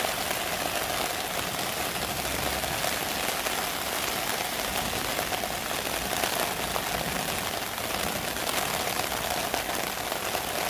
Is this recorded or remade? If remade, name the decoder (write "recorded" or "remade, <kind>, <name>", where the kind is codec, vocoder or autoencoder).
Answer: recorded